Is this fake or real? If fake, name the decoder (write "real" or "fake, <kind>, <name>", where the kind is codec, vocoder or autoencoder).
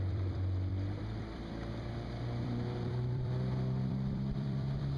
fake, vocoder, BigVGAN v2